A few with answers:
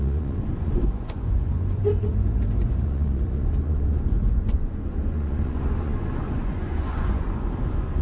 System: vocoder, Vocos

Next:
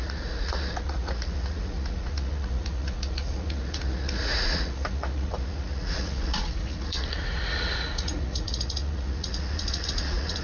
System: vocoder, Vocos